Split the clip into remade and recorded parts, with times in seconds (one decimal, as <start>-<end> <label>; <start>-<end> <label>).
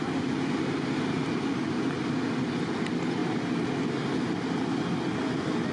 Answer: 0.0-1.2 recorded; 1.2-1.9 remade; 1.9-5.7 recorded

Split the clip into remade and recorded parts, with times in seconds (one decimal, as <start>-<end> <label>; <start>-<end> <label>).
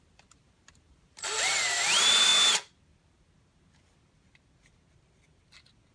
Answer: 0.0-2.3 remade; 2.3-5.9 recorded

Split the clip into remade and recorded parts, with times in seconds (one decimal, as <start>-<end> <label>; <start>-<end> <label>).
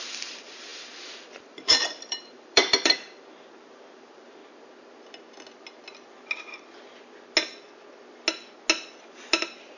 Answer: 0.0-4.4 remade; 4.4-9.0 recorded; 9.0-9.8 remade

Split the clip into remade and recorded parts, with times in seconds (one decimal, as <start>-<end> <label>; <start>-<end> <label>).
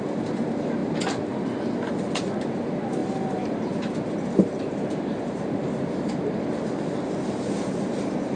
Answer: 0.0-3.0 recorded; 3.0-6.4 remade; 6.4-8.4 recorded